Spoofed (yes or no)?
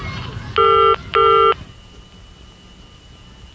no